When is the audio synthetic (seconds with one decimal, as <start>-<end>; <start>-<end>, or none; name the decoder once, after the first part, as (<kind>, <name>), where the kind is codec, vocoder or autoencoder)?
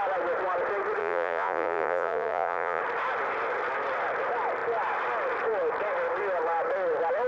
1.0-2.8 (vocoder, Vocos)